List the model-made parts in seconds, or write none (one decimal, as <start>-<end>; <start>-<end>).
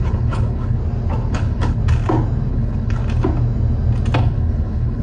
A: 0.0-0.8; 1.3-1.8; 2.5-3.0; 4.2-5.0